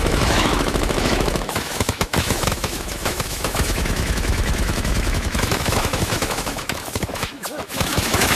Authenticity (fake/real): fake